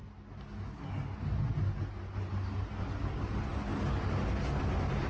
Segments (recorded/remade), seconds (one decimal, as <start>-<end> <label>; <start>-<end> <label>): 0.0-5.1 recorded